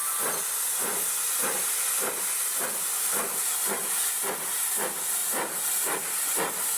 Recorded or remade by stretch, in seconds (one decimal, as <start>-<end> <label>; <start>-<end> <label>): 0.0-6.8 recorded